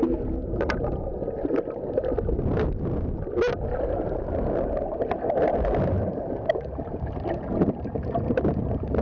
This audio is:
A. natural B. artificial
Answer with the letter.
A